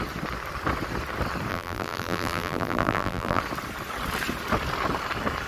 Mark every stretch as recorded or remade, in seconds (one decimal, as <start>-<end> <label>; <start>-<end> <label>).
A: 0.0-1.5 recorded; 1.5-3.4 remade; 3.4-5.5 recorded